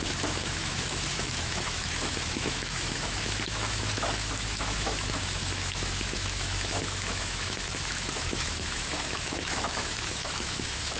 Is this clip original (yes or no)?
no